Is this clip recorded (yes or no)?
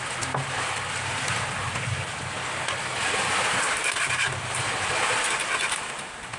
yes